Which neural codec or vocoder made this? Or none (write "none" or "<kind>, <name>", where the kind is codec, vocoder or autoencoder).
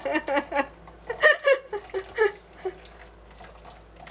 none